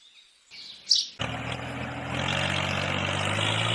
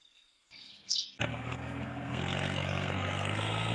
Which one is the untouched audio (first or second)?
first